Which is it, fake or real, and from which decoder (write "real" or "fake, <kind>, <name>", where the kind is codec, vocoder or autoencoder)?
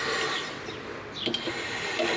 real